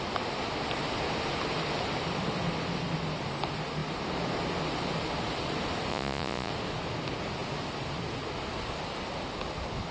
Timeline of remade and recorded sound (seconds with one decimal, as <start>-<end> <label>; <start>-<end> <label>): 0.0-5.9 recorded; 5.9-6.5 remade; 6.5-9.9 recorded